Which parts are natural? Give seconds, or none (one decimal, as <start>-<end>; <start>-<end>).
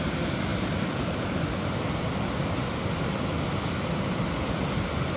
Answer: 0.0-5.2